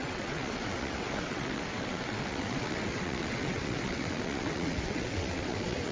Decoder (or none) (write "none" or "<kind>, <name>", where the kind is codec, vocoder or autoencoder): vocoder, WaveNeXt